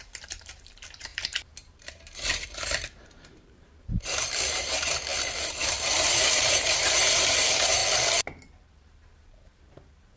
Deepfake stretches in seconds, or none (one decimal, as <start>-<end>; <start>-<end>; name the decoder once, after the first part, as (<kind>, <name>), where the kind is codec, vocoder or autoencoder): 0.0-7.8 (vocoder, BigVGAN v2); 8.7-10.2